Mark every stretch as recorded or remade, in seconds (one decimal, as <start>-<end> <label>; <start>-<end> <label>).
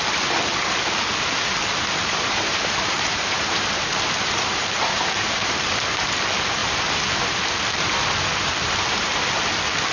0.0-2.0 recorded; 2.0-5.4 remade; 5.4-9.9 recorded